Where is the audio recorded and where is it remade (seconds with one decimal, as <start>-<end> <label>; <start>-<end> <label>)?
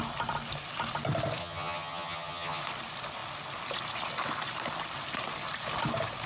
0.0-1.4 recorded; 1.4-2.6 remade; 2.6-6.3 recorded